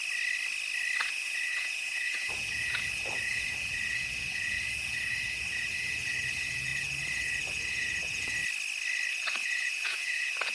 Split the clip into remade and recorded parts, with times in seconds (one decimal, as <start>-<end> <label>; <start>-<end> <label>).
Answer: 0.0-1.0 recorded; 1.0-8.4 remade; 8.4-9.1 recorded; 9.1-10.5 remade